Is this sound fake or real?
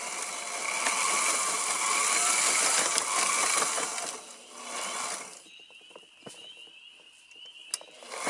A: real